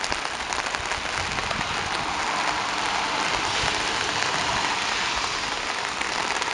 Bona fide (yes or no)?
yes